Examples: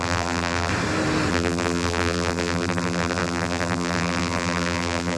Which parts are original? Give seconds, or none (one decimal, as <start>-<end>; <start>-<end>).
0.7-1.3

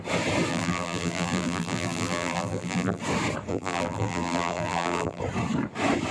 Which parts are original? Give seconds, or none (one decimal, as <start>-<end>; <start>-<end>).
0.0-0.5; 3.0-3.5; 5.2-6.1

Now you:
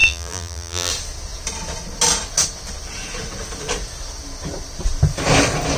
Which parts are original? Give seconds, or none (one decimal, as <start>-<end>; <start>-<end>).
0.9-5.8

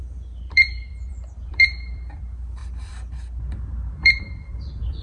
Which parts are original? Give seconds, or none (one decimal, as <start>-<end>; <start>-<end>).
none

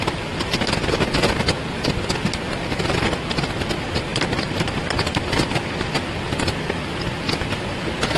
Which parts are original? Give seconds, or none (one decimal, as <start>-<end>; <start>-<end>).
0.0-4.1; 5.9-8.2